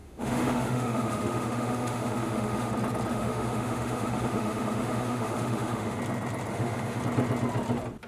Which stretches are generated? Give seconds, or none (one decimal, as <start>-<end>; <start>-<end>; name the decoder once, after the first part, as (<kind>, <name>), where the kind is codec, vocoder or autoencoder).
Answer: 0.0-2.7 (autoencoder, DAC-VAE); 3.1-6.0; 6.5-7.0